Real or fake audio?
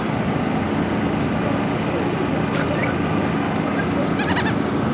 real